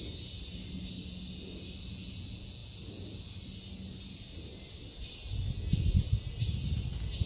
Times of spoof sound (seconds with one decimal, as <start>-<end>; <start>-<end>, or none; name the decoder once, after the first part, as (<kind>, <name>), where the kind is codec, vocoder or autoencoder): none

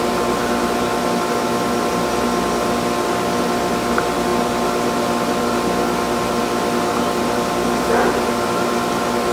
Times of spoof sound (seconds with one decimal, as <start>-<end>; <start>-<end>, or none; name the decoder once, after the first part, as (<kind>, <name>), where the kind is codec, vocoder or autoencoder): none

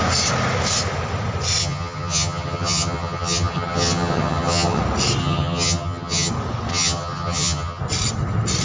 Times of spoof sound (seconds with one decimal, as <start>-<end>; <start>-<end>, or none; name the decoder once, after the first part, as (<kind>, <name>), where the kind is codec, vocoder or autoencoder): 1.6-4.8 (vocoder, HiFi-GAN); 5.2-6.3; 6.7-7.8

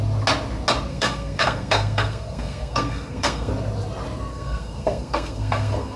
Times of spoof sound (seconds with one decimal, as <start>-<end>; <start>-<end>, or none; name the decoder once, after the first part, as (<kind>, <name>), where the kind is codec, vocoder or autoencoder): 0.9-3.5 (codec, SNAC); 4.3-6.0

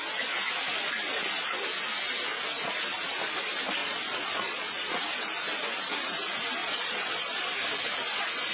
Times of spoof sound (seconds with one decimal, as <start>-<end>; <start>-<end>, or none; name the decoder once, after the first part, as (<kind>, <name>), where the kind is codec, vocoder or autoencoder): 3.8-5.0 (vocoder, Vocos); 6.6-7.4

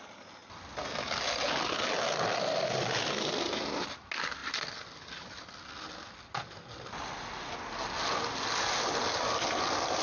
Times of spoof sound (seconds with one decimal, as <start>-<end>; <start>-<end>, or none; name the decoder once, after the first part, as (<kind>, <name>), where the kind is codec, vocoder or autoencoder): none

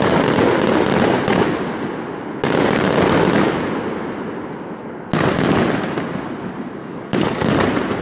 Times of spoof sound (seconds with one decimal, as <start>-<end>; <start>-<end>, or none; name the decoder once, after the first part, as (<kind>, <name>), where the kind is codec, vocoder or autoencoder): 6.8-7.6 (codec, DAC)

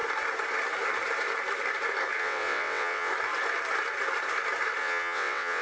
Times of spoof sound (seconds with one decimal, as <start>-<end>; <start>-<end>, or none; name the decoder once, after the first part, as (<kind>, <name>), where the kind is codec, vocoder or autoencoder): 2.2-3.1 (vocoder, WaveNeXt); 4.8-5.6